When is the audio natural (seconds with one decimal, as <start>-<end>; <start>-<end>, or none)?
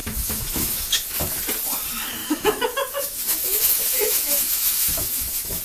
1.4-2.2